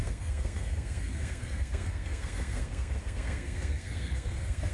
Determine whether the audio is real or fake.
fake